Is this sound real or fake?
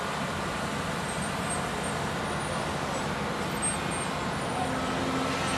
real